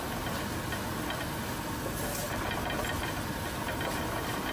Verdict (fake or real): real